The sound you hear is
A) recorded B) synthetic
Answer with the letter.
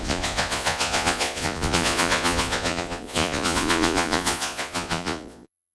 B